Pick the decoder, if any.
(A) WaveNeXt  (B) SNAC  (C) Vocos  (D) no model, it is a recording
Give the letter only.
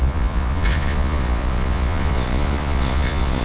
C